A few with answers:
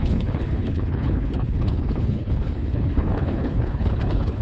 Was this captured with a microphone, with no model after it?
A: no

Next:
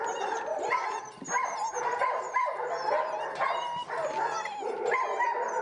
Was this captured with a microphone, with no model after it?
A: yes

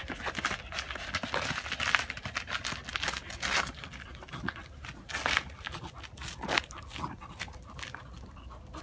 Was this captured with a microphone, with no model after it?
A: yes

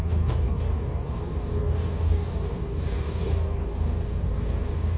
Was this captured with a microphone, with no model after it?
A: no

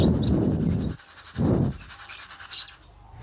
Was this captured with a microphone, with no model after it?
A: yes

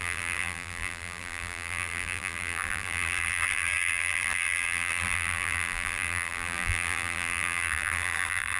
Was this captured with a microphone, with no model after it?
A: no